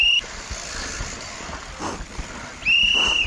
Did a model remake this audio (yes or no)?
no